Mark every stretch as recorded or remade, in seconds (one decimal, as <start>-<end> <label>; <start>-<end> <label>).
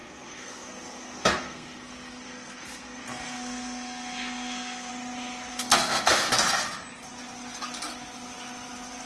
0.0-4.9 remade; 4.9-5.5 recorded; 5.5-6.3 remade; 6.3-9.1 recorded